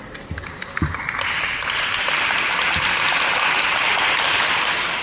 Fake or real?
real